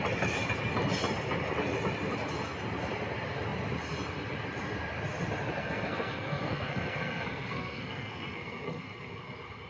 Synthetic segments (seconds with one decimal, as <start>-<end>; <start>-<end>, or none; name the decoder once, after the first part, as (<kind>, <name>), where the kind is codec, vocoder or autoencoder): 5.6-9.2 (codec, SNAC)

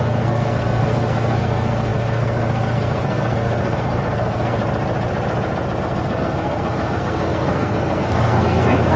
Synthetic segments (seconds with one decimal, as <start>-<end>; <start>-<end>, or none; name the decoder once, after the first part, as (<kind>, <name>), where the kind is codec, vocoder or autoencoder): 0.0-4.6 (codec, SNAC); 5.8-9.0